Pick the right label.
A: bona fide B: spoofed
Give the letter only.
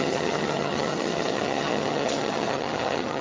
B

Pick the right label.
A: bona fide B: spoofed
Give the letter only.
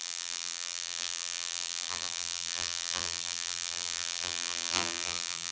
B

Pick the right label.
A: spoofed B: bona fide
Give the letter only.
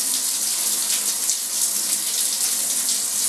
B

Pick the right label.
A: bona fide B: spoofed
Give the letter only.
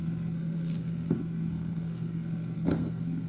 B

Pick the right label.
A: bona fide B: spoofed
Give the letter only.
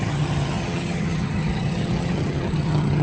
B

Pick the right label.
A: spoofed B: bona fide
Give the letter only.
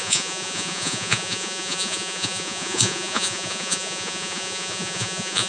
A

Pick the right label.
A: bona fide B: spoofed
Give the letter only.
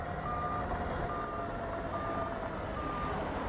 A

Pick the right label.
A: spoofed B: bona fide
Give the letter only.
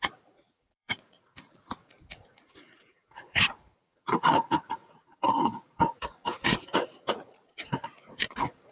A